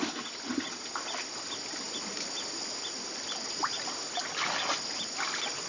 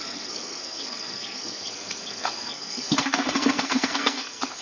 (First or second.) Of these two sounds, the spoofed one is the second